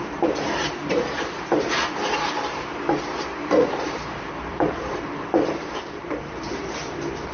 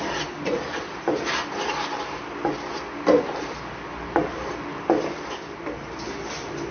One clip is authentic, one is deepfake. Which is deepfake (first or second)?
first